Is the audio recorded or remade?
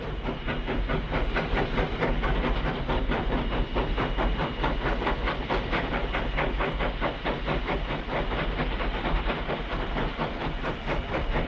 recorded